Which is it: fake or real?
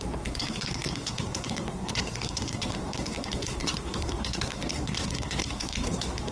fake